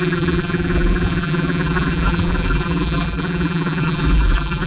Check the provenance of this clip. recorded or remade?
remade